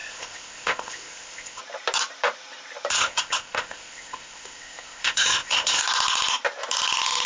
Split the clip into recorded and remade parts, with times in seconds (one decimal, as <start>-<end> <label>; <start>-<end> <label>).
0.0-1.6 remade; 1.6-2.9 recorded; 2.9-5.8 remade; 5.8-7.3 recorded